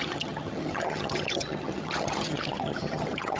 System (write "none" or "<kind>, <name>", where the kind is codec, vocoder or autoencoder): vocoder, HiFi-GAN